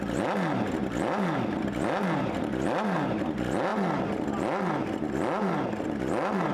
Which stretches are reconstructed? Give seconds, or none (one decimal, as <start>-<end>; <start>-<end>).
none